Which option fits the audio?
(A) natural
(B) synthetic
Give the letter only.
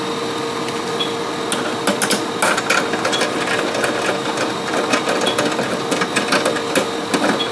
A